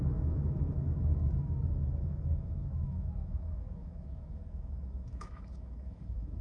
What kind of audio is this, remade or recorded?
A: remade